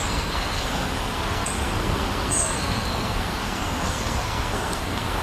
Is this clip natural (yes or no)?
no